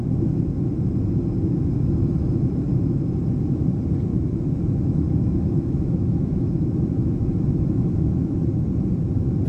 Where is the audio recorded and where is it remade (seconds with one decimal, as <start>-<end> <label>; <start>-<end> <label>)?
0.0-4.1 recorded; 4.1-8.3 remade; 8.3-9.5 recorded